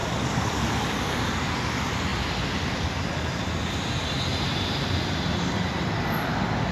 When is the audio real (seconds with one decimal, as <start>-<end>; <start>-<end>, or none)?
1.6-4.3; 5.5-6.7